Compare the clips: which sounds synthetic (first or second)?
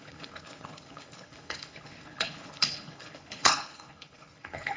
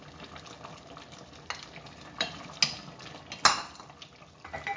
first